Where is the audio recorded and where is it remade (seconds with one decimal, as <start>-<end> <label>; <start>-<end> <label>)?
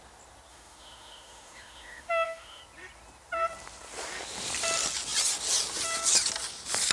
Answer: 0.0-0.5 recorded; 0.5-2.6 remade; 2.6-6.9 recorded